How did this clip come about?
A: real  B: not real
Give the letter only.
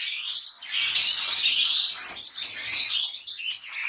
A